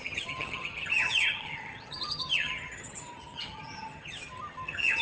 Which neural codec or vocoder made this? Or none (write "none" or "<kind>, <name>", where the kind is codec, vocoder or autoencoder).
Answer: vocoder, HiFi-GAN